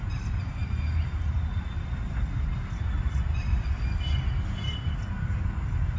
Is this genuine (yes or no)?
yes